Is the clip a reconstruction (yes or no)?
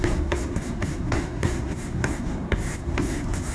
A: yes